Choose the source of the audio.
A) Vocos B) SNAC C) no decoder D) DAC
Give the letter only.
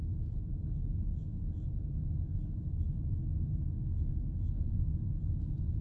C